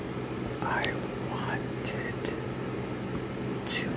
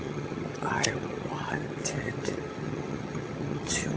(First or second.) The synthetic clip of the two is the second